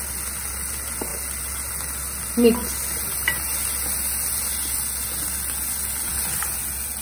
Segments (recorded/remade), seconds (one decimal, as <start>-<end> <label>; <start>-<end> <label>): 0.0-7.0 recorded